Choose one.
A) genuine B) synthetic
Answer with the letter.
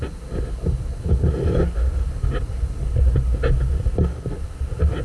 A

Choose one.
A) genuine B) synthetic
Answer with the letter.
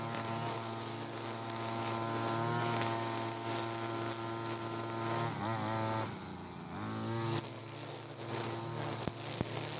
A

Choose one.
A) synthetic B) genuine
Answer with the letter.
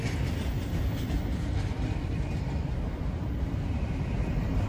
B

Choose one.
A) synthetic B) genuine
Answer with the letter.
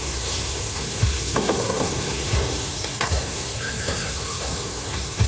A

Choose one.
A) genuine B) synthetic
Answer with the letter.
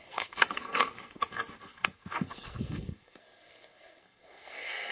B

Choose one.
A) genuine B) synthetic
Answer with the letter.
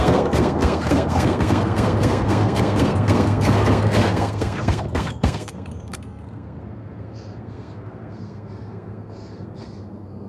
B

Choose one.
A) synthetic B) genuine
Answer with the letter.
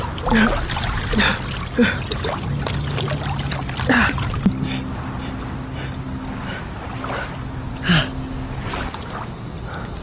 B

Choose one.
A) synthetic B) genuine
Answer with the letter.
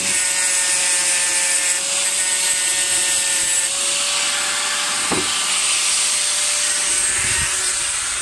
B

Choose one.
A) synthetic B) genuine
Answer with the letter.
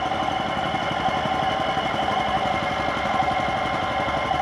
B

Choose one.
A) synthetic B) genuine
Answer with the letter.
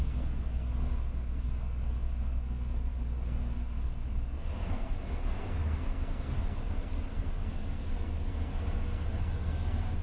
A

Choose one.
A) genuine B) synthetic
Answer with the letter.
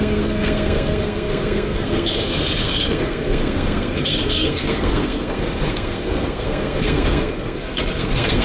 B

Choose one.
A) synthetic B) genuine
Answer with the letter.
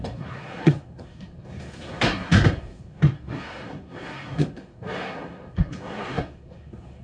A